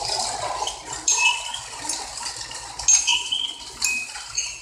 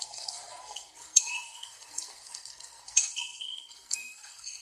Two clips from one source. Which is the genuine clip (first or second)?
first